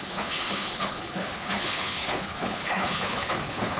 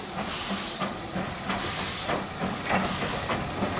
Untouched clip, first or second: second